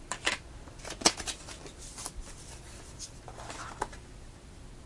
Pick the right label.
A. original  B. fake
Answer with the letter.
A